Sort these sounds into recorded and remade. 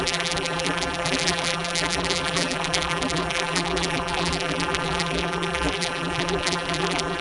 remade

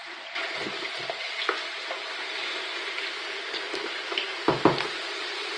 remade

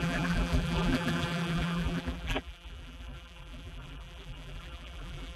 remade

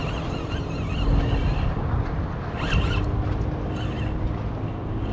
recorded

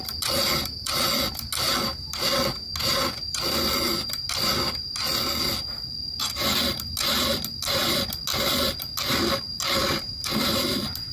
recorded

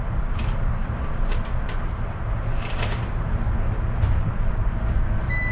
remade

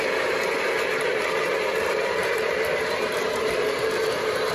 remade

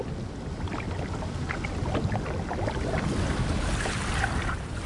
recorded